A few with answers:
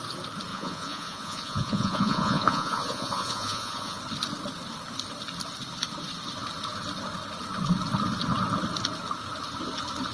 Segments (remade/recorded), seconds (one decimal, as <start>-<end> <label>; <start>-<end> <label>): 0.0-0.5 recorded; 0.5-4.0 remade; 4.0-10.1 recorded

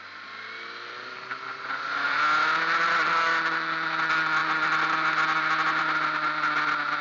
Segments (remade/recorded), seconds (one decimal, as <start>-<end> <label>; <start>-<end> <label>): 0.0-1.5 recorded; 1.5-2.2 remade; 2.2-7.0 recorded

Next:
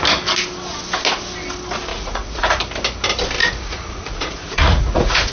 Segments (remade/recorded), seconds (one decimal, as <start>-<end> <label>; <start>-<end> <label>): 0.0-1.9 recorded; 1.9-2.6 remade; 2.6-3.4 recorded; 3.4-5.3 remade

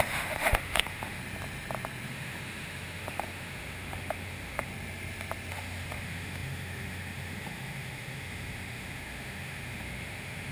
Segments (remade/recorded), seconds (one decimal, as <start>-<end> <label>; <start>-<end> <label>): 0.0-1.2 remade; 1.2-2.1 recorded; 2.1-4.7 remade; 4.7-5.5 recorded; 5.5-10.5 remade

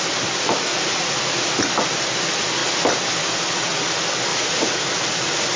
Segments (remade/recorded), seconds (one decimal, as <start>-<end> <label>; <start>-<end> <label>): 0.0-0.7 recorded; 0.7-1.6 remade; 1.6-4.3 recorded; 4.3-4.9 remade; 4.9-5.6 recorded

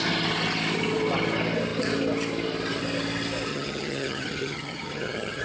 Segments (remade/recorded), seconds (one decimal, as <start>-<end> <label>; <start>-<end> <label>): 0.0-3.5 recorded; 3.5-5.4 remade

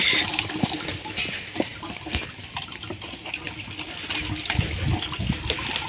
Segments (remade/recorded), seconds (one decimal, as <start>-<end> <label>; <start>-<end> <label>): 0.0-5.9 recorded

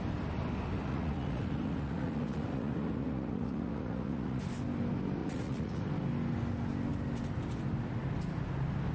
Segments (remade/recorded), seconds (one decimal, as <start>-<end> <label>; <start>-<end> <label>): 0.0-0.9 recorded; 0.9-4.4 remade; 4.4-5.2 recorded; 5.2-5.8 remade; 5.8-8.9 recorded